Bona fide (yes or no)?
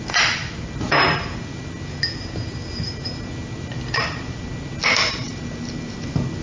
yes